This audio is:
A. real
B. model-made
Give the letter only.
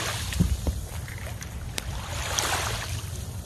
B